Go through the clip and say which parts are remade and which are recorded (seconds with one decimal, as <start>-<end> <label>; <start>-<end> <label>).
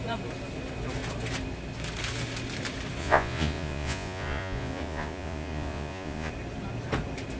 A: 0.0-3.0 recorded; 3.0-6.3 remade; 6.3-7.4 recorded